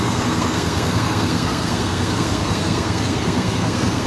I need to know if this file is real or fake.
fake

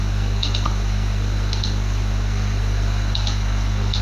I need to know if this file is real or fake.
fake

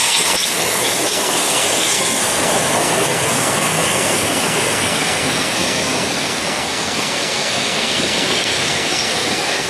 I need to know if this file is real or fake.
fake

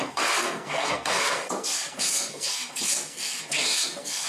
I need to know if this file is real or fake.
fake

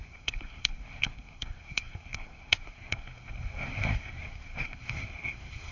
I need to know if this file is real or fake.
fake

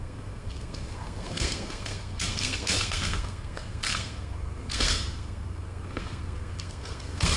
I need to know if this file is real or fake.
fake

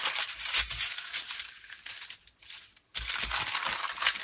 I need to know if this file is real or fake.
real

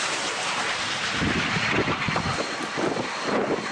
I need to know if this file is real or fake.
real